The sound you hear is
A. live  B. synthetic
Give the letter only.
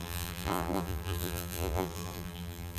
B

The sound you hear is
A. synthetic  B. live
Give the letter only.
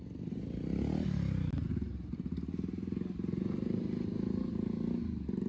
B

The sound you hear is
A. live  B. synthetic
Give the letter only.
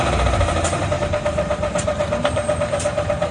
B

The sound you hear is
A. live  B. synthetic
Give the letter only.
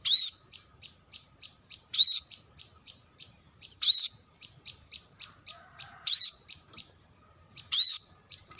B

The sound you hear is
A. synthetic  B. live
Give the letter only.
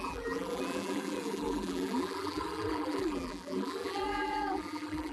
A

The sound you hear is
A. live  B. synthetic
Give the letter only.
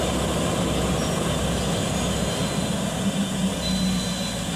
A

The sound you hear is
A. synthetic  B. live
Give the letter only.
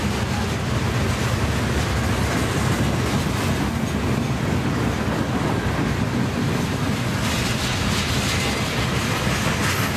B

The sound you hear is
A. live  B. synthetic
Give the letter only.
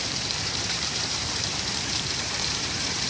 B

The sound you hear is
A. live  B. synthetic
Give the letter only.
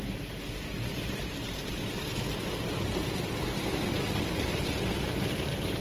B